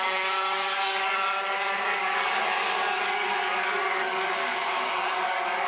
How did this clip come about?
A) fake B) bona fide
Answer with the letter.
A